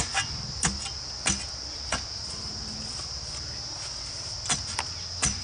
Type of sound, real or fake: real